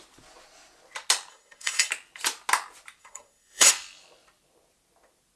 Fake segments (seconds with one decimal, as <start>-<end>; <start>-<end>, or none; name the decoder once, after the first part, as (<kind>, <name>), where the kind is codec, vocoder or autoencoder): 1.3-1.9 (codec, SNAC); 3.0-3.7